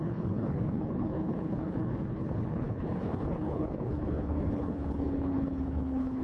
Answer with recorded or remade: remade